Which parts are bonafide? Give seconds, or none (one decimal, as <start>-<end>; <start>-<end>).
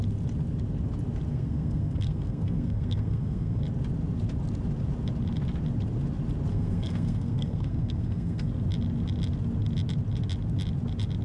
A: 0.0-1.3; 3.6-6.5; 8.5-11.2